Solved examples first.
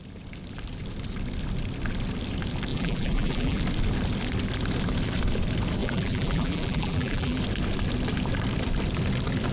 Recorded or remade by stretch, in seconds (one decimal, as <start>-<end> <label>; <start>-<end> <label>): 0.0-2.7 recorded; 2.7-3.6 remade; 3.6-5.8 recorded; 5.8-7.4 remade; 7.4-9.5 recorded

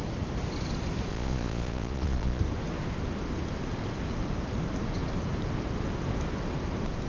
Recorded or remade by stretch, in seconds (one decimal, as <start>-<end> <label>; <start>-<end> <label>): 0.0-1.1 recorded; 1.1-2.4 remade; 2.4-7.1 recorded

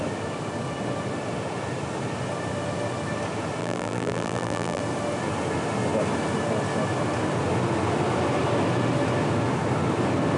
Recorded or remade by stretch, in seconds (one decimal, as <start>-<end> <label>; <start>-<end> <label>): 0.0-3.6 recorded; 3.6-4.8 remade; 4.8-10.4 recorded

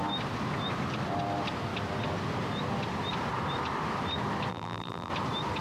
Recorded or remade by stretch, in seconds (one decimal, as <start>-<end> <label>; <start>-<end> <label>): 0.0-4.5 recorded; 4.5-5.1 remade; 5.1-5.6 recorded